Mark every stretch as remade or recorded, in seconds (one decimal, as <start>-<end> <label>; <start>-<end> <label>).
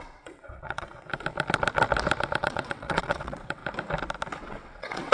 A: 0.0-1.1 remade; 1.1-2.4 recorded; 2.4-3.6 remade; 3.6-4.4 recorded; 4.4-5.1 remade